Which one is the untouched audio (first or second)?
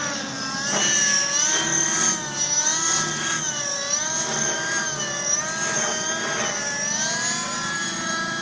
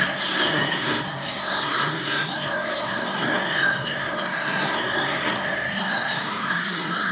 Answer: first